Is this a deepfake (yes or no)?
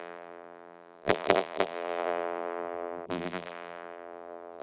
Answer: yes